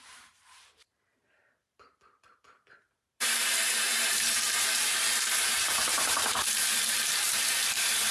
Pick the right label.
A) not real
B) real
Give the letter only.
A